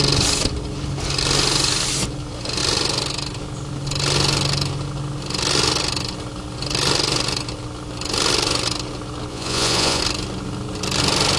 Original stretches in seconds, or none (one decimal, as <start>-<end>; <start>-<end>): 0.0-9.3; 10.0-11.4

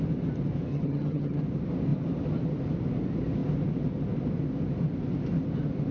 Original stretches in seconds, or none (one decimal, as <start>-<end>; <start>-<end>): 0.0-0.7; 1.4-5.9

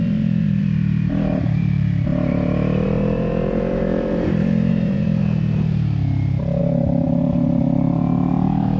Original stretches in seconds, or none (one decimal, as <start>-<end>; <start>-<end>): 5.2-6.6

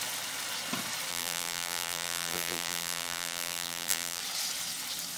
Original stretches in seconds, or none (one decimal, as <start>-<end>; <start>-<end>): 0.0-1.1; 4.2-5.2

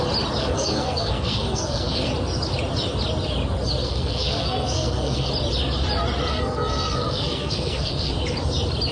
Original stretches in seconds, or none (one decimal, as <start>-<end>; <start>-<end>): 0.0-0.4; 2.1-3.8; 5.3-6.3; 8.1-8.9